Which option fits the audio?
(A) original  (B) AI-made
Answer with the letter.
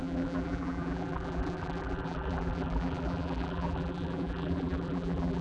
B